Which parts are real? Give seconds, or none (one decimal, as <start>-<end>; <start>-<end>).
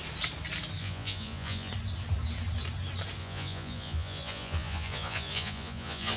0.0-0.8; 1.7-3.2